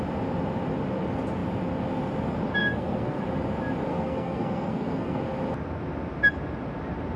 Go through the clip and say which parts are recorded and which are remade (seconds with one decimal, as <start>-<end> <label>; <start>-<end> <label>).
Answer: 0.0-2.6 recorded; 2.6-3.2 remade; 3.2-3.9 recorded; 3.9-5.2 remade; 5.2-7.2 recorded